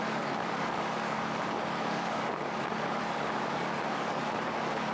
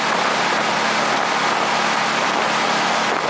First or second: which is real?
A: second